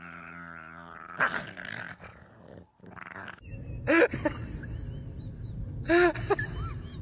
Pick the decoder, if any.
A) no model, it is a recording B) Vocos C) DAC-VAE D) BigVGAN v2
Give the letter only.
A